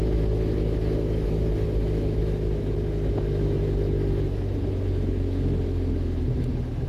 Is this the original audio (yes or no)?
no